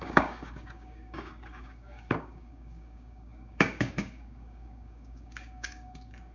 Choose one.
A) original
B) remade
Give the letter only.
B